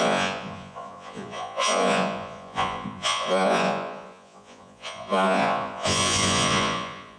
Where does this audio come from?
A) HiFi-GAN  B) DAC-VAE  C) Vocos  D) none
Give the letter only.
C